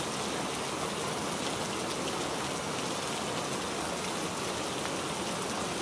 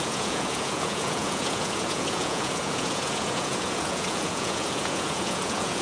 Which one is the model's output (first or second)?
second